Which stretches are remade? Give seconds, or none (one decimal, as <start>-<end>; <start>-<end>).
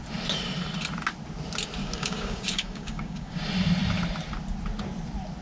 1.8-3.4